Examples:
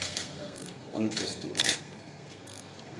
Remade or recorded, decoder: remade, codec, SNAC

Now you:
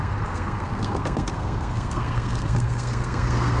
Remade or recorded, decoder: remade, codec, SNAC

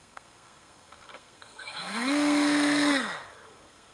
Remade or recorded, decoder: remade, codec, SNAC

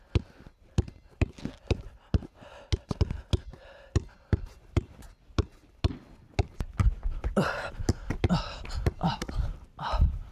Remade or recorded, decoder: recorded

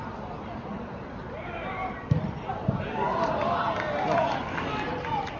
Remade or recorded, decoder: recorded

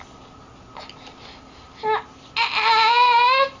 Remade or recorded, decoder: recorded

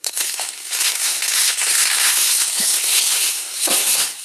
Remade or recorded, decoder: remade, codec, SNAC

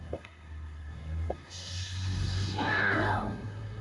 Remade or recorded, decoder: remade, codec, SNAC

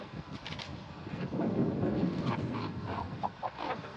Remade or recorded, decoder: remade, codec, SNAC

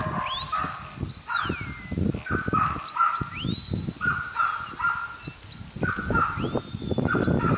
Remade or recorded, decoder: recorded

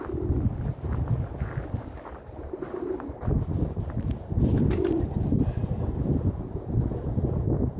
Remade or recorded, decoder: recorded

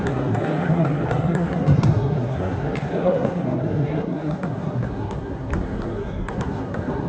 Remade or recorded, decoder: remade, codec, SNAC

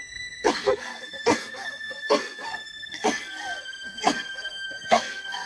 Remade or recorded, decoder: remade, codec, SNAC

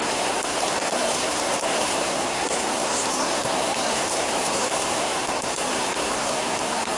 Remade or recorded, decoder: remade, codec, SNAC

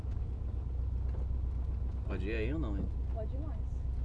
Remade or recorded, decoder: recorded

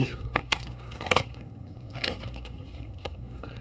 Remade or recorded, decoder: remade, codec, SNAC